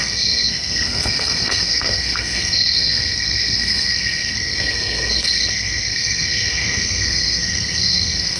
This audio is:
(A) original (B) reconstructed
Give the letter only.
B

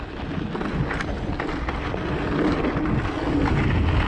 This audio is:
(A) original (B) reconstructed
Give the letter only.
A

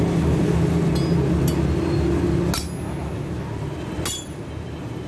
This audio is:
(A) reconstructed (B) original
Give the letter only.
B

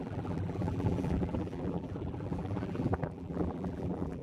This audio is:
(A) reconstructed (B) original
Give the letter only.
A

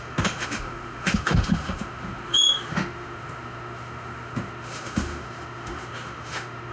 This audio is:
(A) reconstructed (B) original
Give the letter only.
A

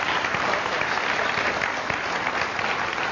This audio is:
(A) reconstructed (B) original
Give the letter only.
B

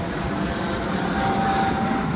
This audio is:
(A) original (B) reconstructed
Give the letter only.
A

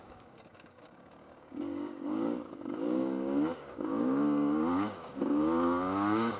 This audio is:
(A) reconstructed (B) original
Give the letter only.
A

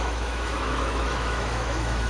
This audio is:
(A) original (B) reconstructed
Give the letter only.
B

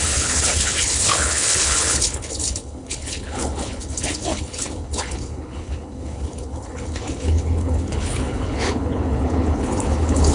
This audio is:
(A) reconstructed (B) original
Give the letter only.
A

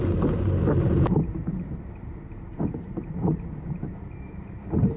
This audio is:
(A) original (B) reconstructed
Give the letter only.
B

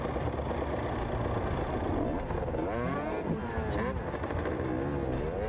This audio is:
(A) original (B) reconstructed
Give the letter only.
A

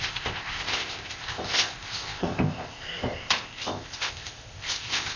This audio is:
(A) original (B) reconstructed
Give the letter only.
B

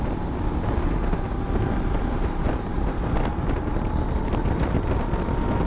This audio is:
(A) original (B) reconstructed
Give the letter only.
A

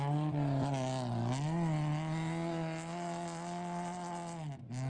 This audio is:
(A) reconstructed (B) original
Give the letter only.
B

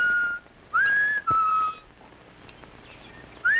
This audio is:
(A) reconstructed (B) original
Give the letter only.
B